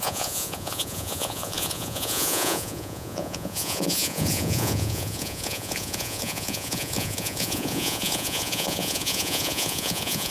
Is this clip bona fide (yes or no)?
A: no